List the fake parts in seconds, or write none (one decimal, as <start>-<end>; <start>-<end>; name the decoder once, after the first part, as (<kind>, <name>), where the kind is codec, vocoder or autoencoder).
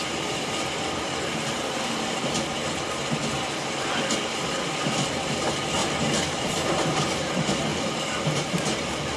5.8-6.7 (vocoder, BigVGAN v2)